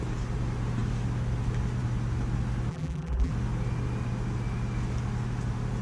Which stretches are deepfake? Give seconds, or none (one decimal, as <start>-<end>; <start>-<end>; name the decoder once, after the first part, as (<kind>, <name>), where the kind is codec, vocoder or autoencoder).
2.7-3.3 (vocoder, BigVGAN v2)